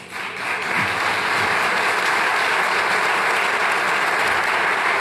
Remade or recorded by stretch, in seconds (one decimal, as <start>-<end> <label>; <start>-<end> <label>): 0.0-5.0 recorded